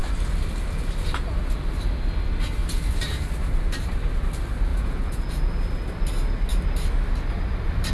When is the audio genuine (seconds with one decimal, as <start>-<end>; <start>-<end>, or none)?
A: 0.0-4.7; 5.3-7.9